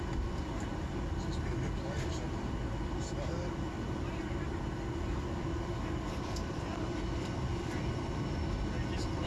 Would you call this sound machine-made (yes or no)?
no